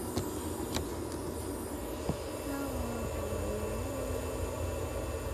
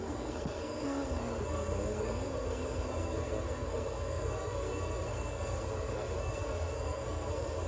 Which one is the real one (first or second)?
first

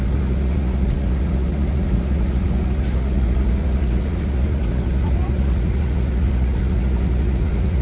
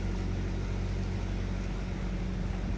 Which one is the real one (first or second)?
second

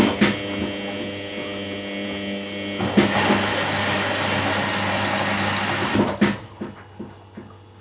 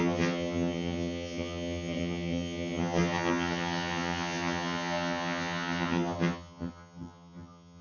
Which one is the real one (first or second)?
first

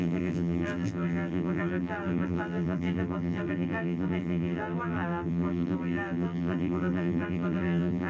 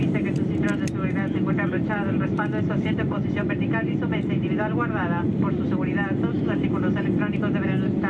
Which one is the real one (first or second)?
second